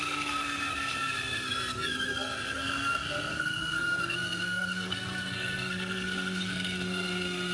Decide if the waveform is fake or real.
fake